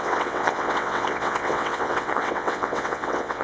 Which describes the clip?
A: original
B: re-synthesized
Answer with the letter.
B